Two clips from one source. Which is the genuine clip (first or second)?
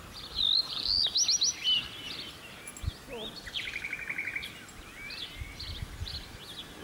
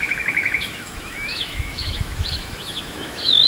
first